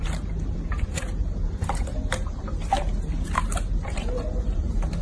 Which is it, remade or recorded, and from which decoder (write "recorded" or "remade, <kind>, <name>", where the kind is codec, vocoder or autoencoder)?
remade, vocoder, BigVGAN v2